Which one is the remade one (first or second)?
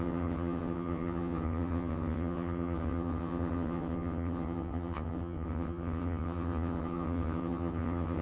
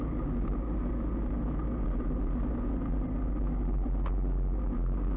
first